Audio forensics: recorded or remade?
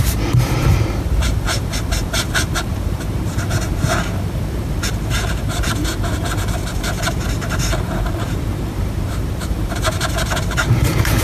remade